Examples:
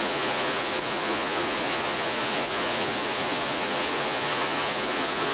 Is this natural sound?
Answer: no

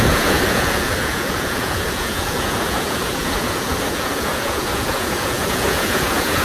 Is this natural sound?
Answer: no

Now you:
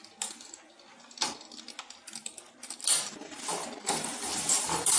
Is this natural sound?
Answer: yes